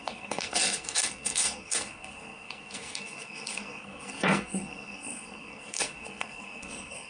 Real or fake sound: fake